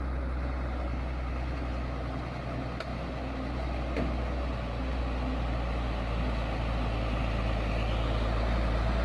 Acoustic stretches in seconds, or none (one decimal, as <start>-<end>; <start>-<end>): 0.0-9.0